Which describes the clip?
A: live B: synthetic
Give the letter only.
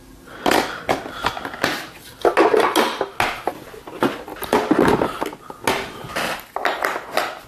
A